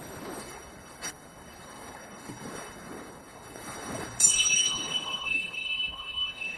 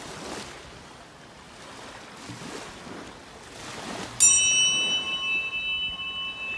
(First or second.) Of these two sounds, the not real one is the first